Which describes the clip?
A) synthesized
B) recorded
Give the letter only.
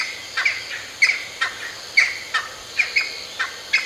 A